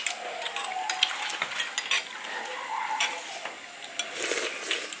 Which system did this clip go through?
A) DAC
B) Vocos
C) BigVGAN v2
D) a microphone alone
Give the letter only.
D